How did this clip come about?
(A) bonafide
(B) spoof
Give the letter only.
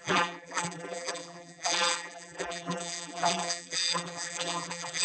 B